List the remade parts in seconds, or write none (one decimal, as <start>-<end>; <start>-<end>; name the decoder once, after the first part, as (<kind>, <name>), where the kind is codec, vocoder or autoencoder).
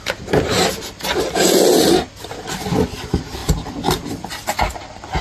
none